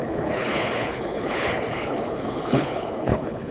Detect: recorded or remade remade